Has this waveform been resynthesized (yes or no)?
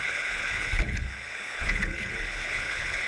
yes